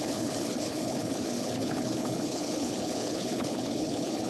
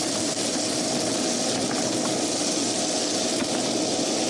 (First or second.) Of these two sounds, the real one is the second